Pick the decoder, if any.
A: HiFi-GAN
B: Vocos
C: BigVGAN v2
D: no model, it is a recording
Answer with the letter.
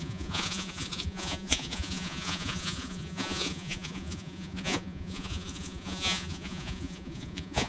B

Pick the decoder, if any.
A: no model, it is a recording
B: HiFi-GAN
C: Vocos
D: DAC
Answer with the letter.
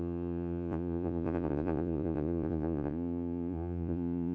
C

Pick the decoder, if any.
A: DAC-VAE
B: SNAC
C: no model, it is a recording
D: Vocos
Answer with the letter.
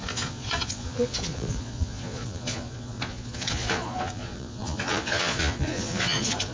D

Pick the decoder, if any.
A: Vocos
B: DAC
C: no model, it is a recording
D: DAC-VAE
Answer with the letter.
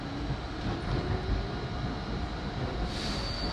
C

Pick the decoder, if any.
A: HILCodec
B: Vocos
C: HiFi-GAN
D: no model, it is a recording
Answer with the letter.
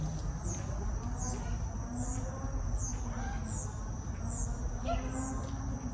D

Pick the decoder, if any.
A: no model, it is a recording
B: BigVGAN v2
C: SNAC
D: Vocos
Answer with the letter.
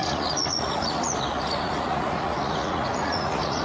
D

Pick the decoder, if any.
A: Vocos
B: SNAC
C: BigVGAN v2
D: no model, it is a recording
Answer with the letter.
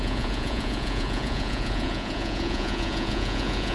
A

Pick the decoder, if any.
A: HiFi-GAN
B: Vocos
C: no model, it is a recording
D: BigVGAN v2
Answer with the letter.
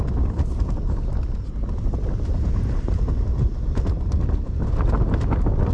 C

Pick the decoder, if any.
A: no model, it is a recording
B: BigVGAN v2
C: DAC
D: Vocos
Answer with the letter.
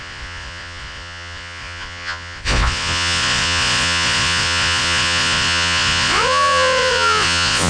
D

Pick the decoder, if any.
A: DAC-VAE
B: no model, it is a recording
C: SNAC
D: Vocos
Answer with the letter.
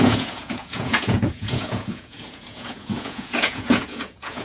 D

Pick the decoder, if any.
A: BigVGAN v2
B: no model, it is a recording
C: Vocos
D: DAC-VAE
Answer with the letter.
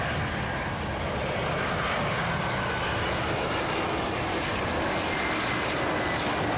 B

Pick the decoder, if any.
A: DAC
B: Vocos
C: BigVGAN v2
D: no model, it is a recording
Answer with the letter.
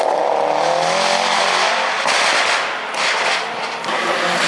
D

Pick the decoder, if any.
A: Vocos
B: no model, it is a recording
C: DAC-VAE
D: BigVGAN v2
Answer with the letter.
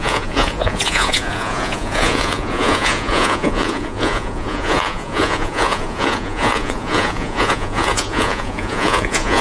A